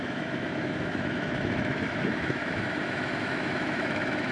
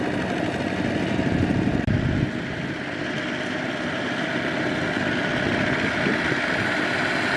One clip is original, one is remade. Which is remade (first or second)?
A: first